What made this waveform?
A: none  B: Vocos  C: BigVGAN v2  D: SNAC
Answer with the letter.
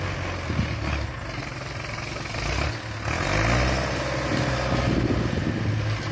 A